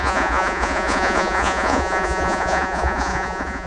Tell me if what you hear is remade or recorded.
remade